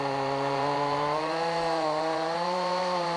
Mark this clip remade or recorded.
remade